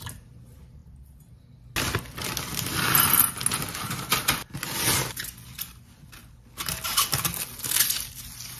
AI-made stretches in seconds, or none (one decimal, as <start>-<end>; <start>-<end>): none